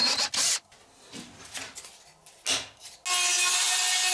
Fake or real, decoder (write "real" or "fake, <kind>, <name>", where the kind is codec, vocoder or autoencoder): real